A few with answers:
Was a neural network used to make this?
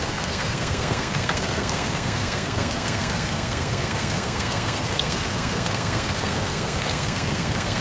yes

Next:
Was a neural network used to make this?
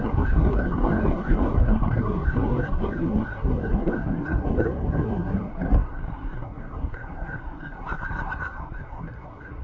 yes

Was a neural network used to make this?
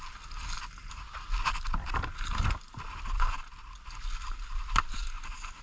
no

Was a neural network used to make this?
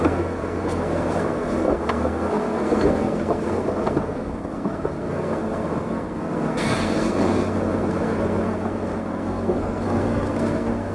yes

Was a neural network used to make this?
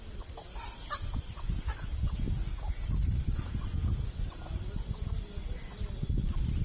no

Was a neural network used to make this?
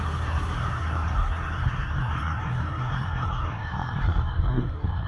yes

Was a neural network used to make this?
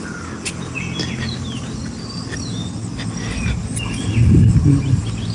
no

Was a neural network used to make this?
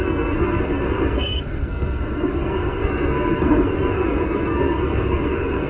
yes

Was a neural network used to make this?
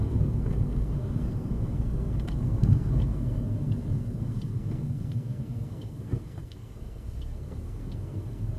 yes